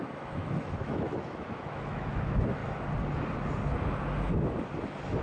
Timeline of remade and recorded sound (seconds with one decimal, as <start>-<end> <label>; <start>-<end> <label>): 0.0-2.6 remade; 2.6-5.2 recorded